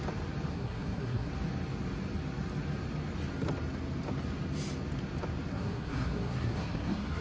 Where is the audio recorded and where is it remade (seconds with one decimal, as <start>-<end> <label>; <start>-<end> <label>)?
0.0-0.5 recorded; 0.5-1.3 remade; 1.3-5.5 recorded; 5.5-7.2 remade